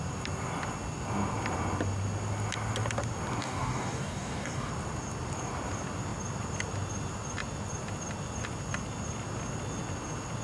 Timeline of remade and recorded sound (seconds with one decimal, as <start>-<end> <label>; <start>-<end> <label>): 0.0-3.4 recorded; 3.4-4.7 remade; 4.7-10.4 recorded